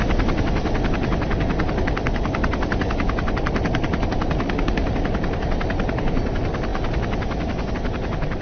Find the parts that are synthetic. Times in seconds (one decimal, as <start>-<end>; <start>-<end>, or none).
none